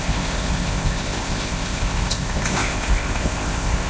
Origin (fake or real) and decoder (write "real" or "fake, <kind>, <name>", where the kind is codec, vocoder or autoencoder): fake, codec, ZipCodec